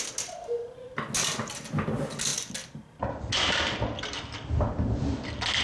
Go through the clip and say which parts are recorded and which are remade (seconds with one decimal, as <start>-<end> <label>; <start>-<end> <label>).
0.0-5.6 recorded

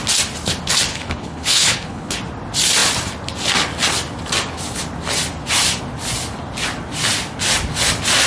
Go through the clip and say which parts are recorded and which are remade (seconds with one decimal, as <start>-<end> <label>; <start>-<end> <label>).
0.0-0.9 recorded; 0.9-2.1 remade; 2.1-8.3 recorded

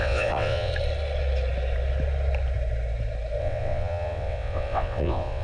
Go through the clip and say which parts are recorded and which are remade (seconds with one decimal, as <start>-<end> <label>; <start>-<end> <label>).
0.0-0.7 remade; 0.7-3.4 recorded; 3.4-5.4 remade

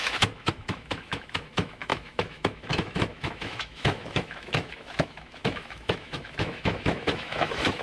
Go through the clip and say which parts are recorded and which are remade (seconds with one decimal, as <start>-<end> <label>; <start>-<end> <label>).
0.0-7.8 remade

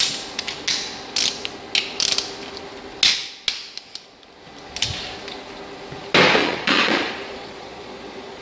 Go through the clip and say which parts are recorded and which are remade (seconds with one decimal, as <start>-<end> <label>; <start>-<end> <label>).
0.0-6.4 recorded; 6.4-8.4 remade